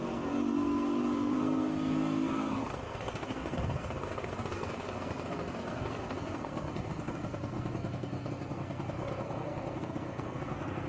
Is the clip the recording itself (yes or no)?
no